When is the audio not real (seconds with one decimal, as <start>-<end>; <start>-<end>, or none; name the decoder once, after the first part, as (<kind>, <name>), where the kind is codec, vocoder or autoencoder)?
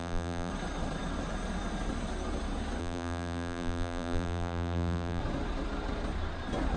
0.0-0.5 (vocoder, BigVGAN v2); 2.8-5.2